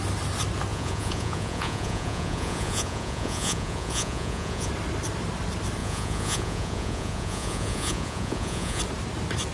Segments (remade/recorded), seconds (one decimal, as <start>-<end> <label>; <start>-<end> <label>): 0.0-0.7 recorded; 0.7-4.7 remade; 4.7-5.8 recorded; 5.8-8.8 remade; 8.8-9.5 recorded